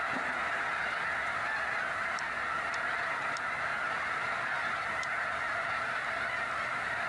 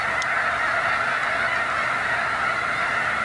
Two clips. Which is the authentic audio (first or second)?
second